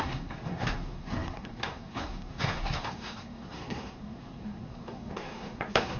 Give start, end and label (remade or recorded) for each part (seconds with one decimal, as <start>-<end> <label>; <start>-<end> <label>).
0.0-6.0 remade